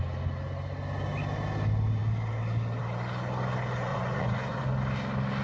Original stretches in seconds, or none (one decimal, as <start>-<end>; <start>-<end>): 0.0-3.9; 4.6-5.4